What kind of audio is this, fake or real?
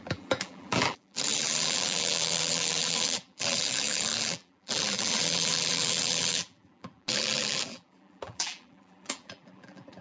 fake